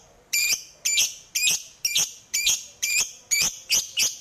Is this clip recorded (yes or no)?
yes